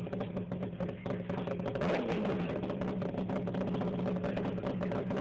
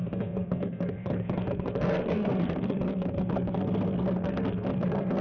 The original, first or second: first